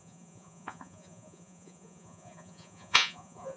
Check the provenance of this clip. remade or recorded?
remade